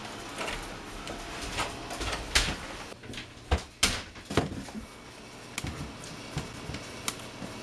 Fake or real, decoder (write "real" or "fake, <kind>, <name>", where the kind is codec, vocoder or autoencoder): real